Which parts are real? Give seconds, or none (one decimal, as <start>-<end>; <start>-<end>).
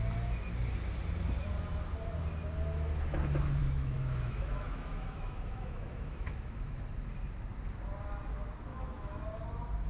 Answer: 0.0-3.6; 6.8-8.7; 9.2-9.9